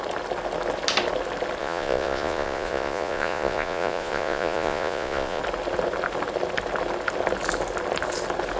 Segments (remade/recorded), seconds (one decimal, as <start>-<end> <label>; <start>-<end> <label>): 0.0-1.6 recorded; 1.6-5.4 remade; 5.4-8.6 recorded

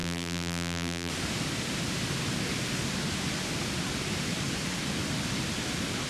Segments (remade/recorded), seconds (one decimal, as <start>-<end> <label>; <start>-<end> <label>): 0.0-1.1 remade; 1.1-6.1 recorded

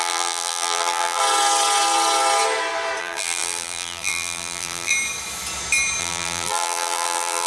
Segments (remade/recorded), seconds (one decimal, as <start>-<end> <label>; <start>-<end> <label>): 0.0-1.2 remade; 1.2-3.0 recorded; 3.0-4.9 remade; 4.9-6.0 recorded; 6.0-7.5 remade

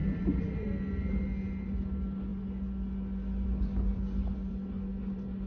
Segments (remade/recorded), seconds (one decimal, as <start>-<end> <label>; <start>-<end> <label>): 0.0-0.7 remade; 0.7-5.5 recorded

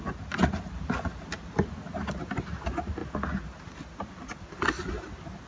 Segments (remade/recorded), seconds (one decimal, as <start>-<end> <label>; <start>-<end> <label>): 0.0-5.5 recorded

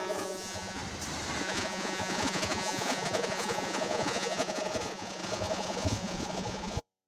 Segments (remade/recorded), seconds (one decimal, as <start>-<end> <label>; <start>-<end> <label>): 0.0-0.8 remade; 0.8-1.4 recorded; 1.4-7.1 remade